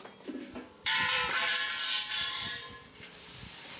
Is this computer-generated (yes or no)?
yes